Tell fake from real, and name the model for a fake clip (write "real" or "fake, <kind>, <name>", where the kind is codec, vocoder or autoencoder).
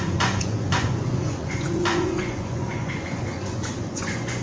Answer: fake, vocoder, Vocos